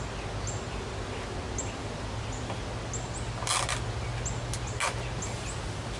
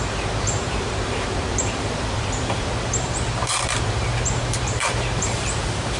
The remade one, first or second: second